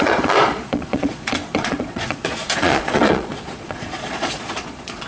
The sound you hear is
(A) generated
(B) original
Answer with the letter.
A